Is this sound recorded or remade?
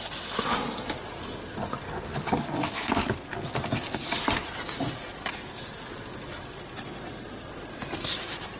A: recorded